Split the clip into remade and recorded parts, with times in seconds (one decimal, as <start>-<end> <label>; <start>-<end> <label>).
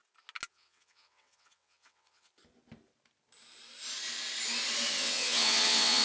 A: 0.0-0.5 recorded; 0.5-2.3 remade; 2.3-4.9 recorded; 4.9-6.0 remade